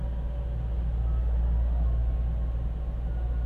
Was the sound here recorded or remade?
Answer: recorded